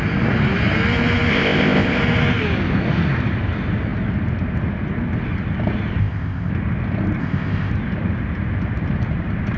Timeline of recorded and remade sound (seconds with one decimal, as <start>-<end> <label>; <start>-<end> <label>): 0.0-1.3 recorded; 1.3-2.0 remade; 2.0-6.0 recorded; 6.0-6.5 remade; 6.5-7.2 recorded; 7.2-7.7 remade; 7.7-9.6 recorded